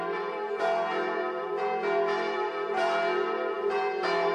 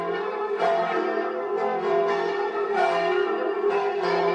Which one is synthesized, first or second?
second